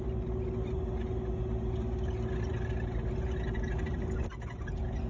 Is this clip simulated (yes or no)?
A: no